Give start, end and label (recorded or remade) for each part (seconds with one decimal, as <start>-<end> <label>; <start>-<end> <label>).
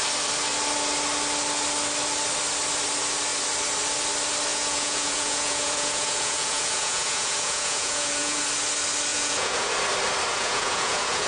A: 0.0-4.5 recorded; 4.5-8.4 remade; 8.4-9.1 recorded; 9.1-9.7 remade; 9.7-10.3 recorded; 10.3-11.3 remade